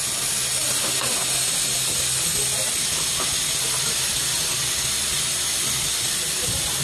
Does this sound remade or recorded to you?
recorded